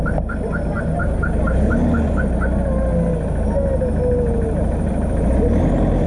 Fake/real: real